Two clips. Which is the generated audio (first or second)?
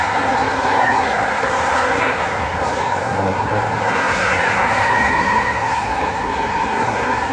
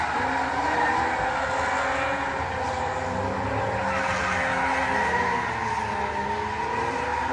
first